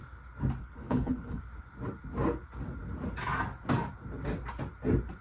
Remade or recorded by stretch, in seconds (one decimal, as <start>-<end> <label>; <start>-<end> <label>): 0.0-0.6 recorded; 0.6-1.4 remade; 1.4-5.2 recorded